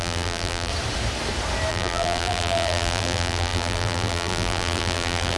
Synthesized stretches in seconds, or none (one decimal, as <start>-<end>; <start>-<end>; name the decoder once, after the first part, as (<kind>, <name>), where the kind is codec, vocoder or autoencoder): 0.0-0.7 (vocoder, BigVGAN v2); 1.7-5.4